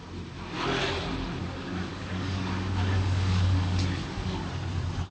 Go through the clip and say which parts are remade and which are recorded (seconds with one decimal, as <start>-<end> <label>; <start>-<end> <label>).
0.0-1.4 recorded; 1.4-4.5 remade; 4.5-5.1 recorded